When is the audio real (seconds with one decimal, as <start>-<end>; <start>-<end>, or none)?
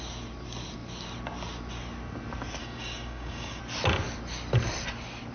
0.0-2.6; 3.6-5.3